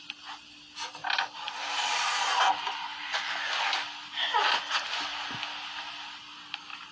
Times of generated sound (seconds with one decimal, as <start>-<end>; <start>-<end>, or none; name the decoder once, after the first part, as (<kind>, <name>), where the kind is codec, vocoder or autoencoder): none